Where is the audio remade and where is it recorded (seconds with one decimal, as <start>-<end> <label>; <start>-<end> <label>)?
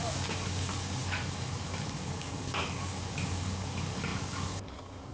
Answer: 0.0-5.1 remade